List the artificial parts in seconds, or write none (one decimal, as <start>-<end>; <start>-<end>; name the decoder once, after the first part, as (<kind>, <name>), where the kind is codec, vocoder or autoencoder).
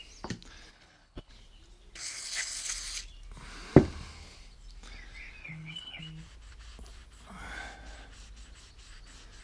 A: 0.7-1.3 (codec, HILCodec); 2.0-2.7; 5.4-6.0